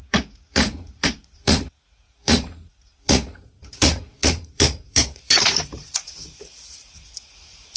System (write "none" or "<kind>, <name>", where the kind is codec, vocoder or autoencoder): vocoder, Vocos